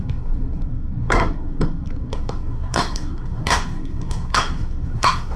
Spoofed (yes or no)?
yes